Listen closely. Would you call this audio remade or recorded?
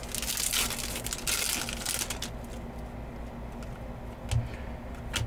recorded